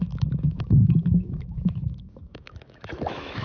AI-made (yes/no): yes